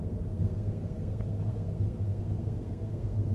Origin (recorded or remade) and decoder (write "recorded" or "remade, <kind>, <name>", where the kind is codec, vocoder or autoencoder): remade, codec, SNAC